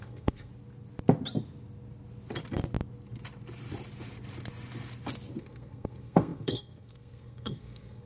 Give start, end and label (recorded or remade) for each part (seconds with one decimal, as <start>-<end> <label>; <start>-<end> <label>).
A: 0.0-0.5 remade; 0.5-5.4 recorded; 5.4-8.1 remade